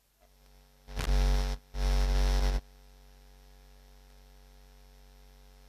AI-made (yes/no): no